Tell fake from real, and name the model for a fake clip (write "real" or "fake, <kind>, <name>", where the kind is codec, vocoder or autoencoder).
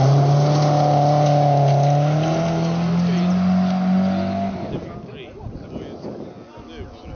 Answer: real